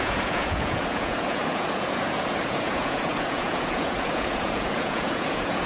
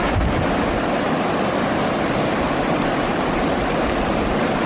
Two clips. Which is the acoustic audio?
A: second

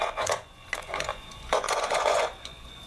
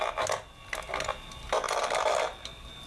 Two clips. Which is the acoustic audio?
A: second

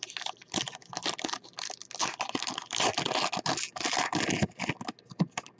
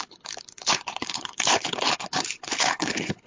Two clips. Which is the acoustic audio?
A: first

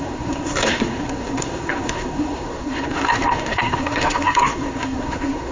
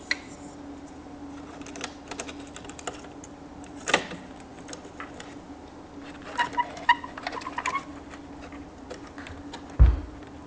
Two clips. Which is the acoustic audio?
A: second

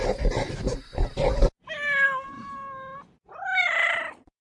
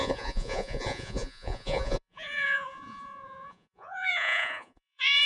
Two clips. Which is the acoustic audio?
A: first